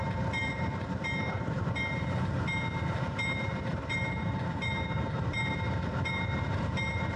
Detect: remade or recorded remade